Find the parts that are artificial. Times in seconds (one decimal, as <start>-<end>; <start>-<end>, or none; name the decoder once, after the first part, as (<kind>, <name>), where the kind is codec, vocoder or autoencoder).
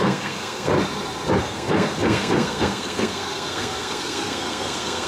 0.0-0.7 (codec, SNAC); 1.4-5.1